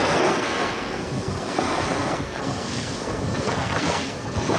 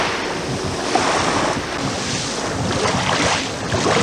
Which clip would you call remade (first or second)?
first